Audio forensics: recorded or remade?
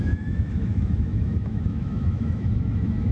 remade